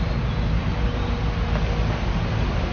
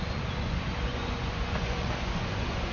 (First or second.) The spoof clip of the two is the second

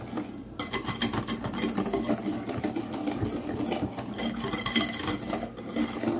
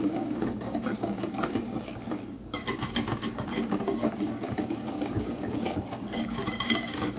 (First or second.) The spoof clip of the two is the second